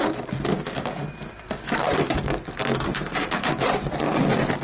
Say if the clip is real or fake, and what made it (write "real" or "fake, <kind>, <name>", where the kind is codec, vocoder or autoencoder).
real